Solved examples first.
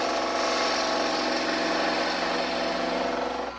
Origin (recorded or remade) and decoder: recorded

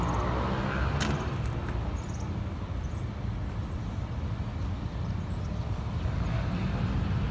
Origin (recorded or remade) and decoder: recorded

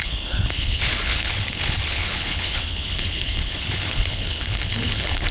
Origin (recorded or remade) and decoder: remade, codec, HILCodec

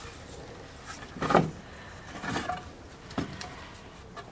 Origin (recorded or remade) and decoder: recorded